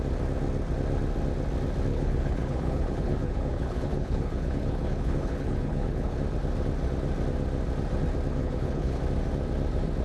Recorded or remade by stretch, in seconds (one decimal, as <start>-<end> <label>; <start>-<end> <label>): 0.0-1.9 recorded; 1.9-6.2 remade; 6.2-8.4 recorded; 8.4-9.0 remade; 9.0-10.0 recorded